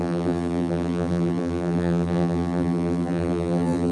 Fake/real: fake